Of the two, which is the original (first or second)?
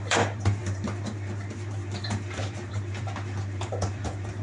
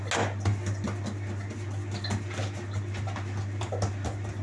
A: second